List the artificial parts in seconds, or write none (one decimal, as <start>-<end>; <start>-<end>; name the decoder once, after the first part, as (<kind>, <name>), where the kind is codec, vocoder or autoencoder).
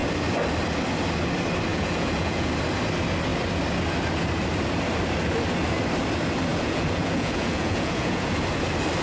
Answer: 1.7-2.5 (vocoder, Vocos); 6.5-8.3